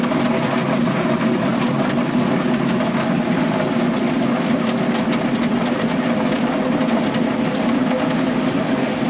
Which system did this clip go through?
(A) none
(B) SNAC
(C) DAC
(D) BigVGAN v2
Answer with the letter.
A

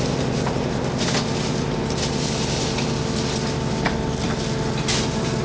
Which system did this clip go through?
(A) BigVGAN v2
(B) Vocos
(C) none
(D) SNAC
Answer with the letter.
C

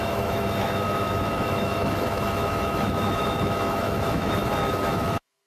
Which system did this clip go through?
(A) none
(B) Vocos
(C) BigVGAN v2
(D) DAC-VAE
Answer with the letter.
D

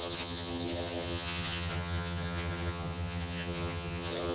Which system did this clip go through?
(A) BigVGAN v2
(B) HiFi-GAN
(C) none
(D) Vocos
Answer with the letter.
B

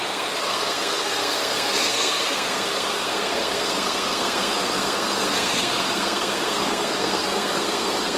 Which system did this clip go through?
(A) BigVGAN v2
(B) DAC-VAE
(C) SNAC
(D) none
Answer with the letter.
C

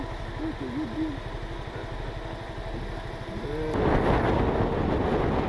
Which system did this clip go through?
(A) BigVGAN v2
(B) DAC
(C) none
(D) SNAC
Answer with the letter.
C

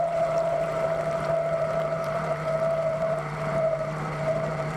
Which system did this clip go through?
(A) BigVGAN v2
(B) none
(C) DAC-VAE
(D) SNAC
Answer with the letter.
A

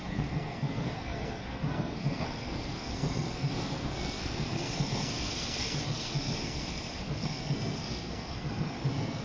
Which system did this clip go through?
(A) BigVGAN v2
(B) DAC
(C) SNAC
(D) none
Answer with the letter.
C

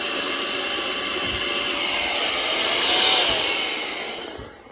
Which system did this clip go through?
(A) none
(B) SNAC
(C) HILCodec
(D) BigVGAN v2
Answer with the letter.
A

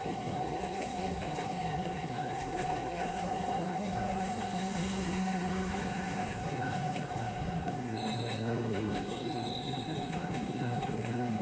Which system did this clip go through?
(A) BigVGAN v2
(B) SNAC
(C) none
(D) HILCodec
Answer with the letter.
B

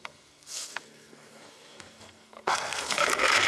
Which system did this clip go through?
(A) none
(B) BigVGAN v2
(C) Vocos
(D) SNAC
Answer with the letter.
D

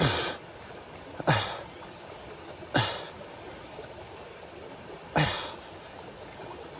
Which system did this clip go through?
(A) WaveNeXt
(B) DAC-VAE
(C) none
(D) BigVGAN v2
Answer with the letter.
C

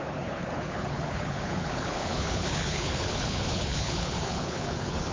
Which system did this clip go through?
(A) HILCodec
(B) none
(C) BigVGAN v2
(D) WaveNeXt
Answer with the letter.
A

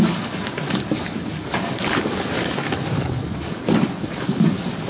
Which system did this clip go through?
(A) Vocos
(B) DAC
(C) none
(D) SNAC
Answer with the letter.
B